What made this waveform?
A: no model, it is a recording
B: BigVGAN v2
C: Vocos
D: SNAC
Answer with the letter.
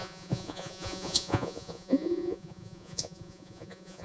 C